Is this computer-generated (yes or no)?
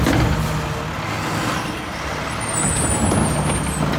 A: no